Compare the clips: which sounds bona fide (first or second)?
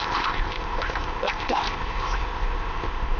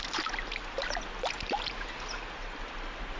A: second